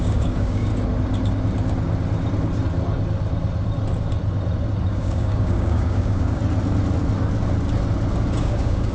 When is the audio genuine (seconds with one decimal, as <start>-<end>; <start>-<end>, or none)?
0.7-4.9; 6.4-8.4